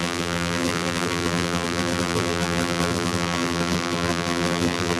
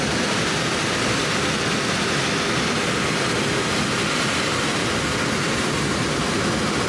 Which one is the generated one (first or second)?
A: first